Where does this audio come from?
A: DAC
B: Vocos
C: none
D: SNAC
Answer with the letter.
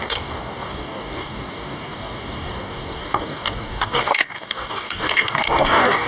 A